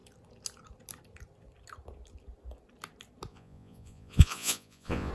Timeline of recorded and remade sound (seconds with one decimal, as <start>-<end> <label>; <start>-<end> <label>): 0.0-3.3 recorded; 3.3-5.1 remade